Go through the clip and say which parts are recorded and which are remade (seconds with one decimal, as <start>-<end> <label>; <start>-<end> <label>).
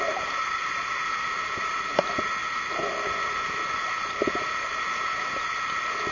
0.0-0.4 recorded; 0.4-1.0 remade; 1.0-6.1 recorded